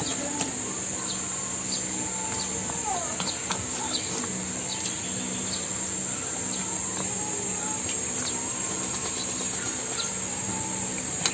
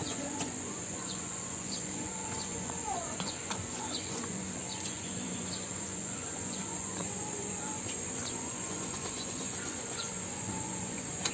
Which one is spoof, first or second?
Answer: second